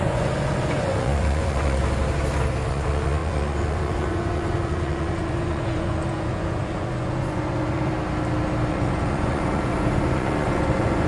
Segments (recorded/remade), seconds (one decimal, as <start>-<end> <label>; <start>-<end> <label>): 0.0-1.8 remade; 1.8-2.7 recorded; 2.7-7.9 remade; 7.9-8.7 recorded; 8.7-11.1 remade